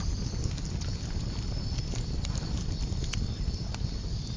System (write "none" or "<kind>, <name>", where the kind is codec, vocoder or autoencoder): none